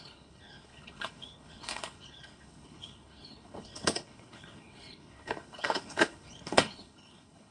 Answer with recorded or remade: remade